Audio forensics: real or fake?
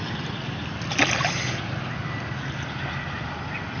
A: real